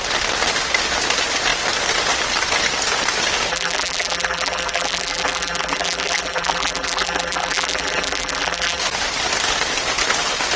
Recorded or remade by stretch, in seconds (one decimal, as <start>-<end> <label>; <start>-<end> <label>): 0.0-3.5 recorded; 3.5-8.8 remade; 8.8-10.6 recorded

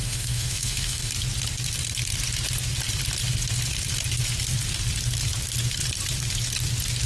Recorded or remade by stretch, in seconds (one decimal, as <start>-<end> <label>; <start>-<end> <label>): 0.0-1.1 remade; 1.1-7.1 recorded

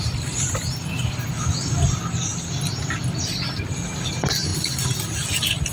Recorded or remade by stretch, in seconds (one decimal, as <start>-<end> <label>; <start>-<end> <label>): 0.0-5.7 recorded

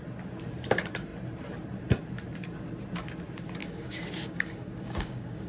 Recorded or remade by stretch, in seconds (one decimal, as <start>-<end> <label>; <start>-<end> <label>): 0.0-3.6 recorded; 3.6-5.5 remade

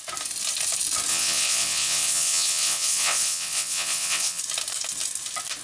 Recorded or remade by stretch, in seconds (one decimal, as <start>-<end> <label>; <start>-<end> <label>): 0.0-1.1 recorded; 1.1-4.4 remade; 4.4-5.6 recorded

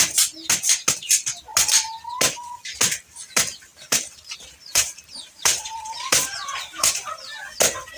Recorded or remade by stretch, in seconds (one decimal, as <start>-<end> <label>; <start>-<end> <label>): 0.0-3.7 recorded; 3.7-7.0 remade; 7.0-8.0 recorded

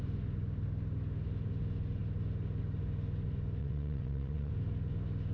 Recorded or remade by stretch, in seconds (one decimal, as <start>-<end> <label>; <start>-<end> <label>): 0.0-3.6 recorded; 3.6-4.5 remade; 4.5-5.3 recorded